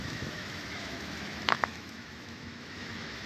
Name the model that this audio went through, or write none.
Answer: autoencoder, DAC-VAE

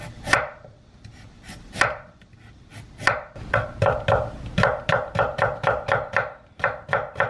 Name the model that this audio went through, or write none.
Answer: none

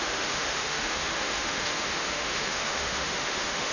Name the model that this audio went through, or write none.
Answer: autoencoder, DAC-VAE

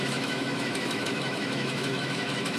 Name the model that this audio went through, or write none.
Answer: autoencoder, DAC-VAE